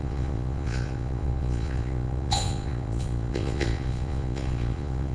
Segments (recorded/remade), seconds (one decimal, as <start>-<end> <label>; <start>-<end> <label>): 0.0-5.1 remade